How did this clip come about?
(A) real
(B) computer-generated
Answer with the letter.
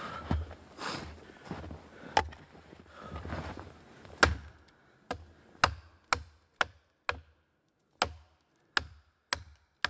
A